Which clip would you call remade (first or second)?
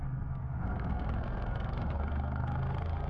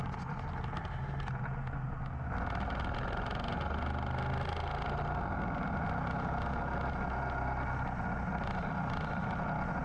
first